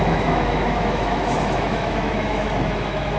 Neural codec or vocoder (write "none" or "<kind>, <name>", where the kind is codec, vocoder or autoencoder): autoencoder, DAC-VAE